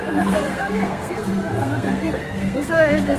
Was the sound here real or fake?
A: fake